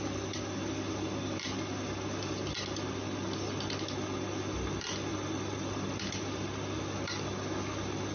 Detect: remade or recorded recorded